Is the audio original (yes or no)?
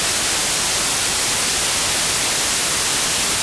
yes